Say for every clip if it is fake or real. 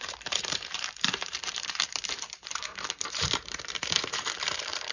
fake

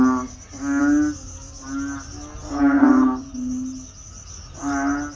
real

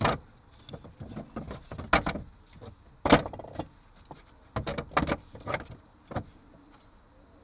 real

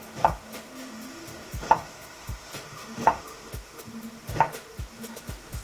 fake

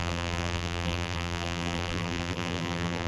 fake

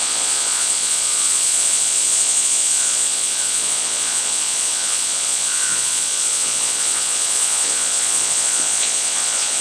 fake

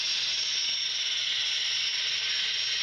real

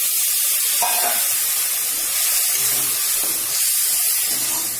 real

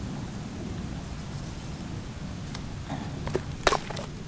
real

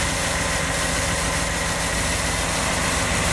real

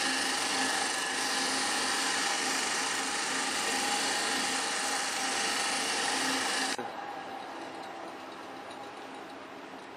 real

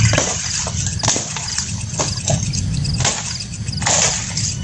real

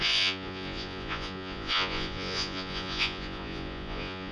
fake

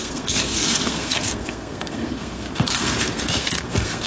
fake